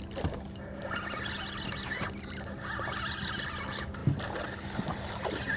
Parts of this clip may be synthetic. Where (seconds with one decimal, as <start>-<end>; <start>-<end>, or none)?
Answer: none